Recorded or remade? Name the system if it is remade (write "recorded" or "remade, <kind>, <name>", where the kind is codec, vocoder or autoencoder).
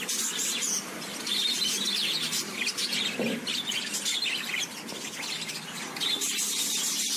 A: recorded